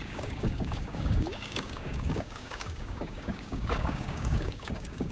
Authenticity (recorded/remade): remade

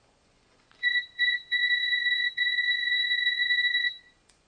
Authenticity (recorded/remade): remade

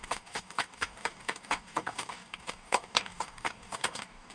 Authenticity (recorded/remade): remade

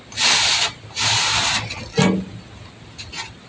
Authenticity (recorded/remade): recorded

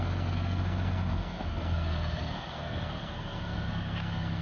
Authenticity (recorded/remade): remade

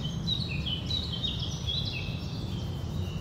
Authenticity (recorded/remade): recorded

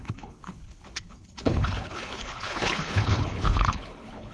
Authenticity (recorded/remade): remade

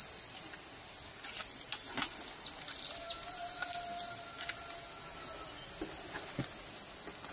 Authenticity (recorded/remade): recorded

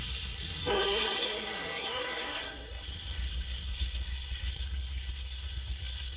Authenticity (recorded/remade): remade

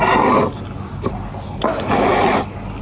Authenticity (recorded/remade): recorded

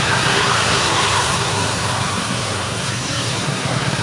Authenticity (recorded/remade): remade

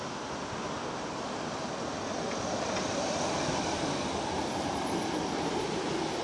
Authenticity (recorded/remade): recorded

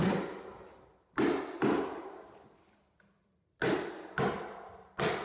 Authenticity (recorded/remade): recorded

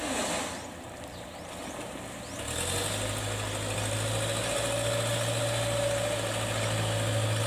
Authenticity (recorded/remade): recorded